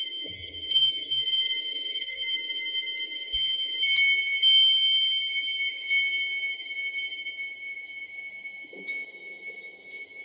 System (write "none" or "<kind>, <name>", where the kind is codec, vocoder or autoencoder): autoencoder, DAC-VAE